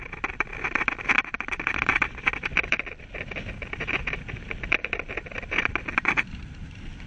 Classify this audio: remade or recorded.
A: recorded